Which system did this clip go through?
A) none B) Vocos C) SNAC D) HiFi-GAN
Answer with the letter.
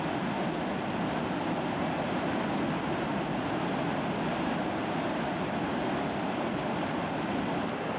A